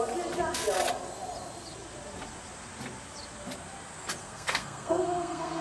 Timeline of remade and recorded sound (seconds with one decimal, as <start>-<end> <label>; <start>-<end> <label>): 0.0-4.2 recorded; 4.2-5.6 remade